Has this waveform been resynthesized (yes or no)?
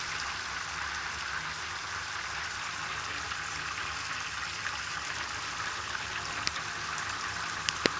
no